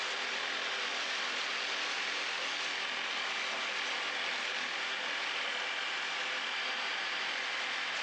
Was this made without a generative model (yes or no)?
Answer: yes